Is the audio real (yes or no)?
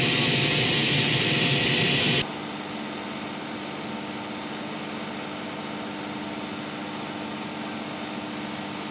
yes